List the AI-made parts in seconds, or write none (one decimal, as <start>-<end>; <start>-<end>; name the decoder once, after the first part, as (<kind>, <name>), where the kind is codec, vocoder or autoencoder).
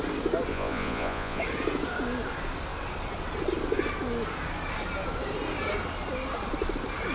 0.5-1.4 (vocoder, Vocos)